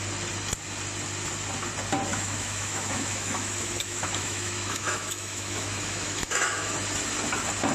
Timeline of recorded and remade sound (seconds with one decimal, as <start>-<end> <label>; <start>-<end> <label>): 0.0-2.1 recorded; 2.1-6.7 remade; 6.7-7.7 recorded